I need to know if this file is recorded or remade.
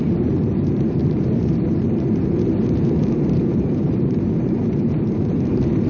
remade